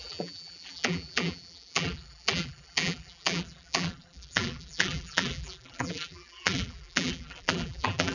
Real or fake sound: fake